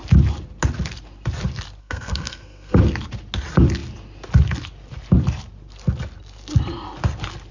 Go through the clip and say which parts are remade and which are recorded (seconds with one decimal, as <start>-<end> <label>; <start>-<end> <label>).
0.0-1.8 recorded; 1.8-2.8 remade; 2.8-7.5 recorded